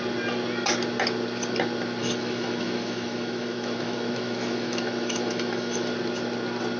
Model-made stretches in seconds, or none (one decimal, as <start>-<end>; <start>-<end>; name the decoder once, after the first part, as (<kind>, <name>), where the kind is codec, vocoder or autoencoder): 2.0-5.9 (autoencoder, DAC-VAE)